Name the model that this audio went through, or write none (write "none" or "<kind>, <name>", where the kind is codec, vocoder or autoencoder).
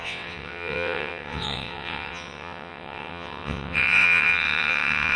vocoder, WaveNeXt